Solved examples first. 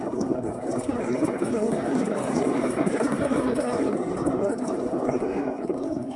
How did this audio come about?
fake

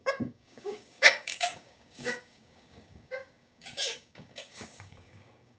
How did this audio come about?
fake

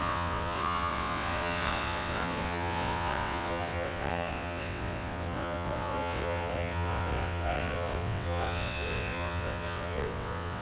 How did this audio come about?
fake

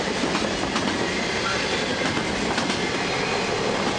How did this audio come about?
real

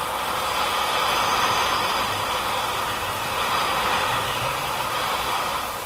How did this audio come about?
real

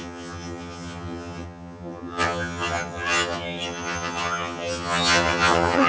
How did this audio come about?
fake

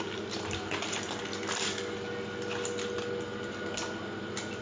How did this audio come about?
real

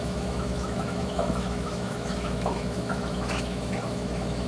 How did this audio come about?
fake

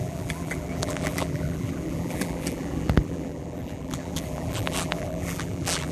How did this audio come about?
fake